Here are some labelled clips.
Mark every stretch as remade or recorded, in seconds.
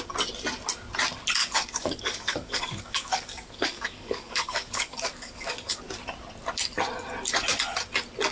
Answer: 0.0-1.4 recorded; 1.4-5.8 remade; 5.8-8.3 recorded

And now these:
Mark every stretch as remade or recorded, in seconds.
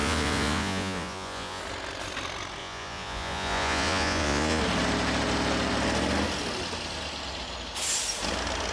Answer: 0.0-1.6 remade; 1.6-2.6 recorded; 2.6-4.6 remade; 4.6-8.7 recorded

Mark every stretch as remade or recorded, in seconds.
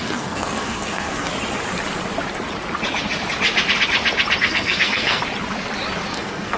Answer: 0.0-1.3 remade; 1.3-4.4 recorded; 4.4-5.2 remade; 5.2-6.1 recorded; 6.1-6.6 remade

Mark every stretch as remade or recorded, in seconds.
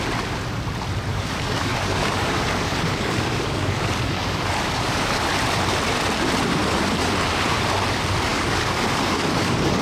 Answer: 0.0-1.1 recorded; 1.1-5.2 remade; 5.2-8.3 recorded; 8.3-9.8 remade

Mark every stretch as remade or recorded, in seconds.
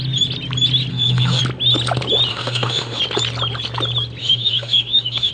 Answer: 0.0-0.9 recorded; 0.9-1.4 remade; 1.4-2.3 recorded; 2.3-3.0 remade; 3.0-4.2 recorded; 4.2-5.3 remade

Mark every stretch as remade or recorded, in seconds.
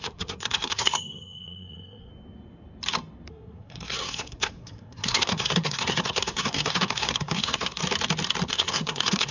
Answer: 0.0-2.1 remade; 2.1-3.3 recorded; 3.3-7.8 remade; 7.8-8.5 recorded; 8.5-9.3 remade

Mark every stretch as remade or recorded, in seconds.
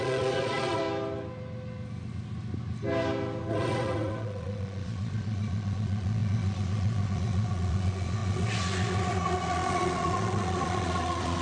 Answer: 0.0-0.8 remade; 0.8-3.5 recorded; 3.5-11.4 remade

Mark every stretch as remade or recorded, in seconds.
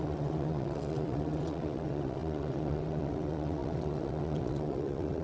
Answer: 0.0-5.2 remade